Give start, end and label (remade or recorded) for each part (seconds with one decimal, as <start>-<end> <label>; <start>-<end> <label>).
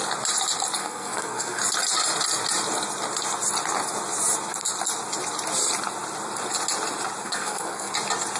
0.0-0.8 recorded; 0.8-1.6 remade; 1.6-7.2 recorded; 7.2-7.9 remade; 7.9-8.4 recorded